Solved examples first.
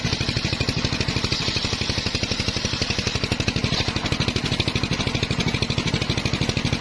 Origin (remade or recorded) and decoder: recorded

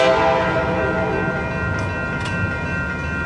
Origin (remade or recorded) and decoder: recorded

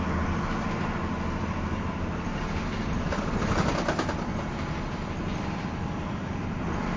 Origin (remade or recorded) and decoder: recorded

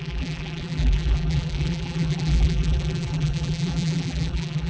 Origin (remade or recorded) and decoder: remade, vocoder, BigVGAN v2